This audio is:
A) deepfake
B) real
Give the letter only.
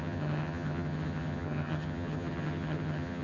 A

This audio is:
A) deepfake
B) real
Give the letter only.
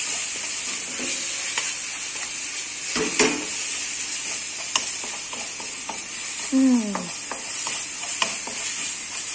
B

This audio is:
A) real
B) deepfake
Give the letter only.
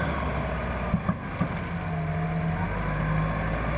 A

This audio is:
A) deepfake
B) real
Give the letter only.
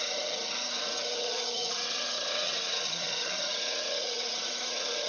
A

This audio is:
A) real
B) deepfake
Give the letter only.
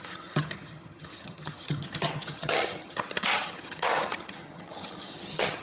B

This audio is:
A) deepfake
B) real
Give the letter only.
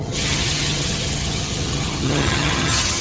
A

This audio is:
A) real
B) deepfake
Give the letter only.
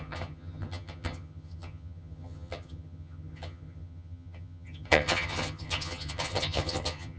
B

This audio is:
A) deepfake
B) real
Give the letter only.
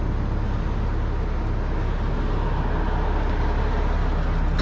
B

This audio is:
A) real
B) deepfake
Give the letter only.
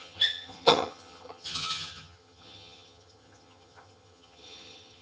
B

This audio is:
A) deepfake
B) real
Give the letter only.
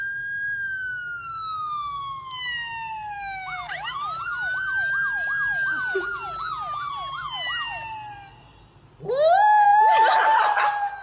B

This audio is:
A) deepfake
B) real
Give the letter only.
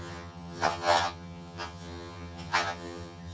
A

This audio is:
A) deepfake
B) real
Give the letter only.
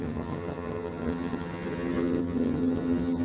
A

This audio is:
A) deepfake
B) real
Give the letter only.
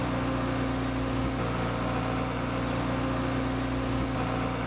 B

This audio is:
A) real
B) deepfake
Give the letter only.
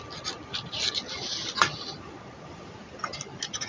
A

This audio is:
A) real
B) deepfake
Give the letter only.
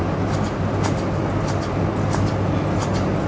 A